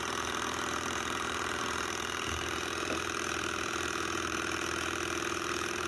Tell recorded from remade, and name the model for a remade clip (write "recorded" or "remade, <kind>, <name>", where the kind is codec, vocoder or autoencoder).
remade, vocoder, BigVGAN v2